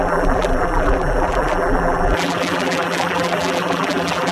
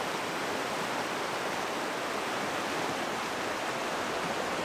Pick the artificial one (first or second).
first